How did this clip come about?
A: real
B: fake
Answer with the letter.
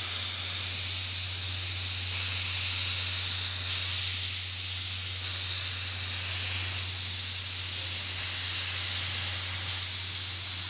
A